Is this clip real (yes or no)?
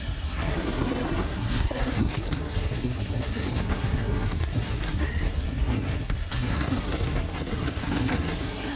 no